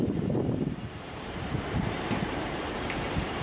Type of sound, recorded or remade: remade